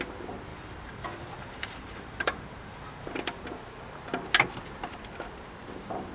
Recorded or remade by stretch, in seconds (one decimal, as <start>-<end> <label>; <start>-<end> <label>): 0.0-0.5 recorded; 0.5-3.4 remade; 3.4-6.1 recorded